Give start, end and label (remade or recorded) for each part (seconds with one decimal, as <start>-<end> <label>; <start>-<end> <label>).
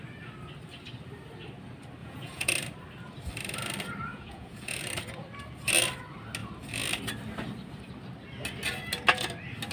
0.0-2.0 recorded; 2.0-2.5 remade; 2.5-4.1 recorded; 4.1-4.8 remade; 4.8-9.7 recorded